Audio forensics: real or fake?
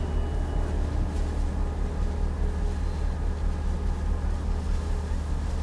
real